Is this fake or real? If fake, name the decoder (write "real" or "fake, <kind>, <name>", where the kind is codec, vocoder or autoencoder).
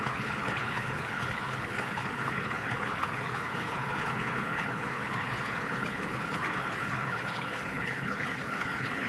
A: fake, codec, HILCodec